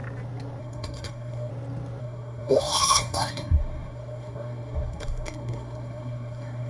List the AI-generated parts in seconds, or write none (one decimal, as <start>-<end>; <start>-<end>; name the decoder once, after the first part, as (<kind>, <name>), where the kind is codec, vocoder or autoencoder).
0.6-1.5 (codec, SNAC); 2.0-6.7